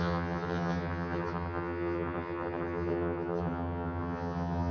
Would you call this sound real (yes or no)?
no